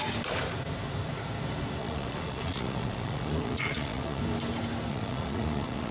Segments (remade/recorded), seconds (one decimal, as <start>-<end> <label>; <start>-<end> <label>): 0.0-1.8 recorded; 1.8-4.2 remade; 4.2-4.9 recorded; 4.9-5.9 remade